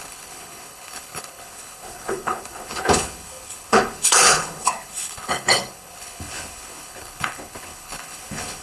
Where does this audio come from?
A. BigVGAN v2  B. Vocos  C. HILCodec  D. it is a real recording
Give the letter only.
C